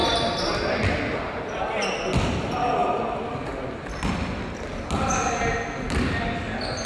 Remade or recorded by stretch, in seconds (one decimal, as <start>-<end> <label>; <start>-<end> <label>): 0.0-0.6 remade; 0.6-6.9 recorded